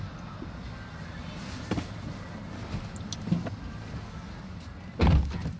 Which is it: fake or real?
real